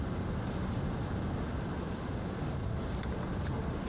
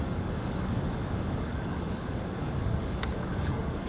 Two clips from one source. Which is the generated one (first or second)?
second